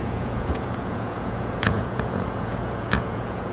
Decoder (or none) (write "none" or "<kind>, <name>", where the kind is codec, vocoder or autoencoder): vocoder, Vocos